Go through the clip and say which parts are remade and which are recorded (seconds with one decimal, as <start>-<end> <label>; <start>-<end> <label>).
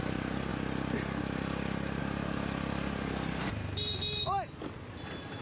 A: 0.0-5.4 recorded